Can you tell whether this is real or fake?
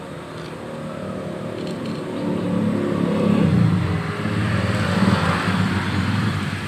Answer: real